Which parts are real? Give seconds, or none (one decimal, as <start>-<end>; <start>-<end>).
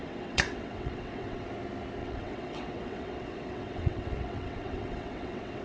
1.5-2.0